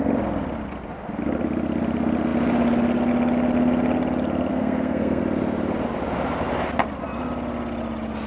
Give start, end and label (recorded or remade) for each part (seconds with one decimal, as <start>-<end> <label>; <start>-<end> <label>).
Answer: 0.0-4.5 recorded; 4.5-5.2 remade; 5.2-8.3 recorded